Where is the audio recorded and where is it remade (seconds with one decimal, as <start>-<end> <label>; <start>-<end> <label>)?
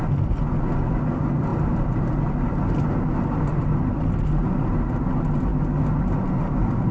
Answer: 0.0-6.9 recorded